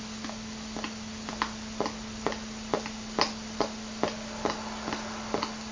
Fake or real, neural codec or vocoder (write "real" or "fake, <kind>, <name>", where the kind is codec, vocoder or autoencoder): real